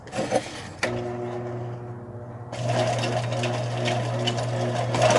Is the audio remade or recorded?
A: recorded